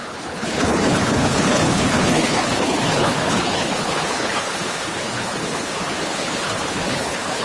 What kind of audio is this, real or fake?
fake